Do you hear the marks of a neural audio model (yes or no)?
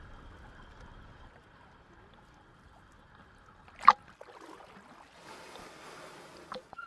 no